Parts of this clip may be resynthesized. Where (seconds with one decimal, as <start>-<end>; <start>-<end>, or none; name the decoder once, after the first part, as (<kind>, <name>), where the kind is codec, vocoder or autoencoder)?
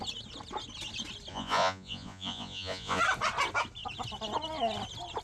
1.3-3.0 (vocoder, Vocos)